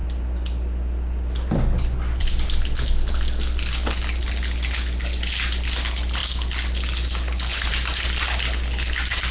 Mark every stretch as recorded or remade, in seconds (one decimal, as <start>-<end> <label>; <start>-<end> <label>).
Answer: 0.0-9.3 recorded